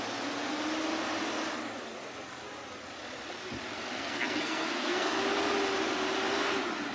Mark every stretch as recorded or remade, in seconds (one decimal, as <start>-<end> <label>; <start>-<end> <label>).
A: 0.0-3.9 recorded; 3.9-5.2 remade; 5.2-6.9 recorded